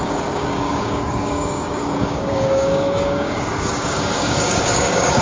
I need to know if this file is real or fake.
fake